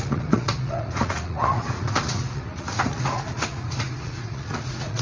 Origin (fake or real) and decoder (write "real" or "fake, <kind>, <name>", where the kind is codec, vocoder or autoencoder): fake, vocoder, Vocos